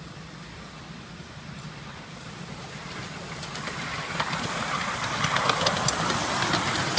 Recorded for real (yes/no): yes